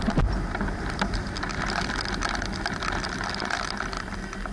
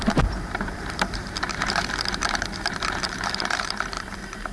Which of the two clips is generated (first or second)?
second